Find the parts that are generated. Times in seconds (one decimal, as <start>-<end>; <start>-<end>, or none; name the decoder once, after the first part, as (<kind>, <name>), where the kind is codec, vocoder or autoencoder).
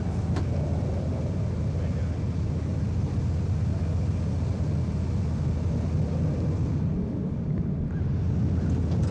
none